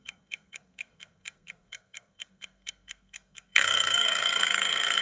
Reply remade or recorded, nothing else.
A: remade